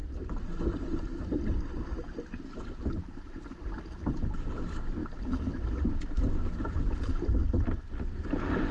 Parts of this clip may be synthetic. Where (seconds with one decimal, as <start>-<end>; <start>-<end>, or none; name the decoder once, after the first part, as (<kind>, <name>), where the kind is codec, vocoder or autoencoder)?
none